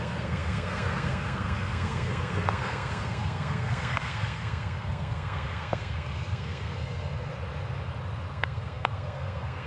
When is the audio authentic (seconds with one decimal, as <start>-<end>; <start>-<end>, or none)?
7.3-8.3